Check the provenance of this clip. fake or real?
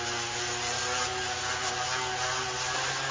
real